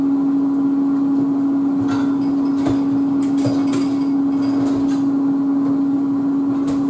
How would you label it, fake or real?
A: real